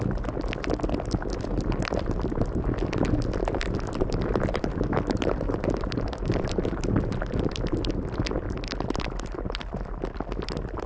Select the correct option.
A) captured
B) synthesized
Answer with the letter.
B